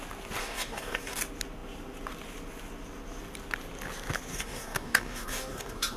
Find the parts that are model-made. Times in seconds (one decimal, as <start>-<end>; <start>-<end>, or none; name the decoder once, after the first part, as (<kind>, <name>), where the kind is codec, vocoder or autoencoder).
0.4-1.2 (codec, DAC); 4.3-6.0